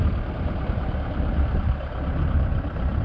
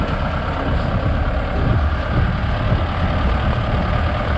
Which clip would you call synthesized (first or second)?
first